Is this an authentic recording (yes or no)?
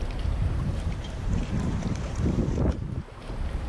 no